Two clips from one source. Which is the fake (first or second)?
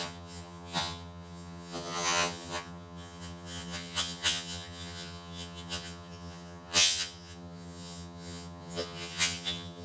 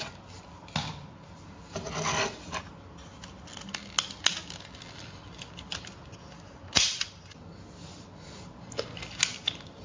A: first